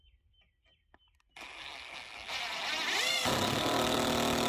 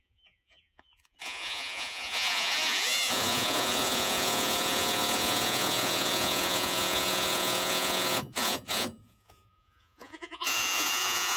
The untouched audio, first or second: first